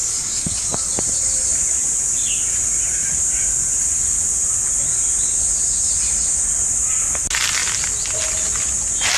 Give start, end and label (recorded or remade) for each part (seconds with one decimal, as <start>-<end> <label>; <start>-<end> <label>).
0.0-0.9 remade; 0.9-9.2 recorded